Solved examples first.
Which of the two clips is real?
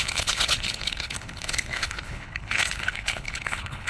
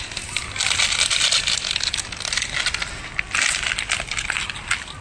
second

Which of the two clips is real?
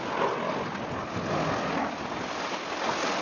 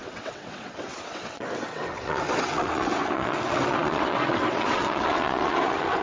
first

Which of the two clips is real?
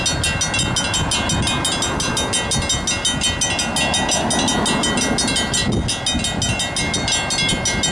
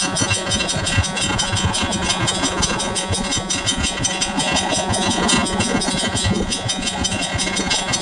first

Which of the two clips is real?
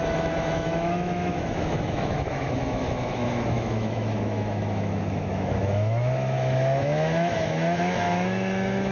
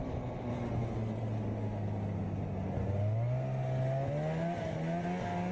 second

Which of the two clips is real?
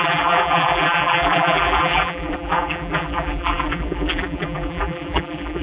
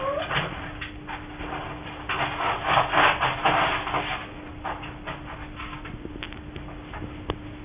second